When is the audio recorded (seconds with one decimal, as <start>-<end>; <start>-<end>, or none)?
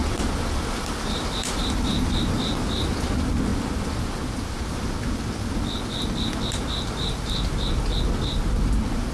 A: 2.3-3.5; 5.5-9.1